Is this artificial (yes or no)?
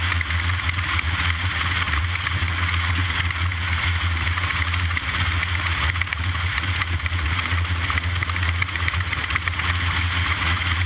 yes